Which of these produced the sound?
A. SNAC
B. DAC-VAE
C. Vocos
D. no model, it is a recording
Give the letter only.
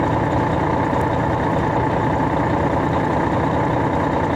D